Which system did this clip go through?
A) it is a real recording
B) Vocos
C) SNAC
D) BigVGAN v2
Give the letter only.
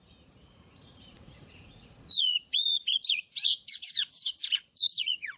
B